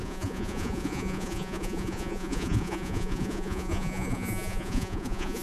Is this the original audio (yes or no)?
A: no